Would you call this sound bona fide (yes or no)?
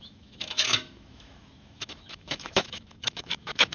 no